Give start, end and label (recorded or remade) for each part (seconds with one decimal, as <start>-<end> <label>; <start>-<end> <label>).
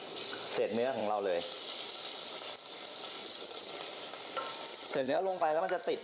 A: 0.0-3.2 recorded; 3.2-3.8 remade; 3.8-4.7 recorded; 4.7-5.6 remade; 5.6-6.0 recorded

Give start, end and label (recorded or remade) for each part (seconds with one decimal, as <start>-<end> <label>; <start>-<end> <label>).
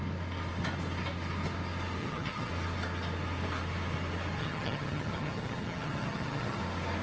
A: 0.0-2.0 recorded; 2.0-2.5 remade; 2.5-4.4 recorded; 4.4-6.6 remade; 6.6-7.0 recorded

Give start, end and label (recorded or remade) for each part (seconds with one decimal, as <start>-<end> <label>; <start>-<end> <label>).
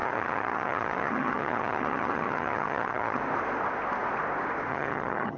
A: 0.0-3.2 remade; 3.2-4.7 recorded; 4.7-5.4 remade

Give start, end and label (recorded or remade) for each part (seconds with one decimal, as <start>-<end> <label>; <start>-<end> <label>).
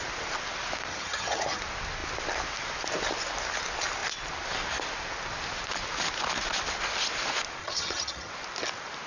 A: 0.0-0.9 recorded; 0.9-1.6 remade; 1.6-7.6 recorded; 7.6-8.3 remade; 8.3-9.1 recorded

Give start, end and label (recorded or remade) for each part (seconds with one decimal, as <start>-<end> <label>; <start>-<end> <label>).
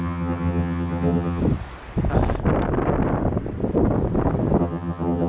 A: 0.0-1.4 remade; 1.4-4.6 recorded; 4.6-5.3 remade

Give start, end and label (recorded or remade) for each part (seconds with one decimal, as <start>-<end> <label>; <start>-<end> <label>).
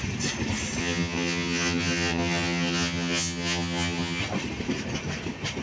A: 0.0-0.8 recorded; 0.8-4.2 remade; 4.2-5.6 recorded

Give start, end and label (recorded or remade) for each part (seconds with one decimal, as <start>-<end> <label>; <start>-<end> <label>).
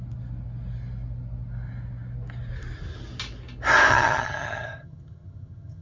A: 0.0-3.9 recorded; 3.9-5.8 remade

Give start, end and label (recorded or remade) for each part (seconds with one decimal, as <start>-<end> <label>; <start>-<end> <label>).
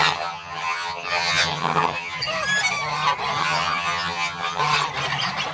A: 0.0-2.2 remade; 2.2-3.4 recorded; 3.4-4.6 remade; 4.6-5.5 recorded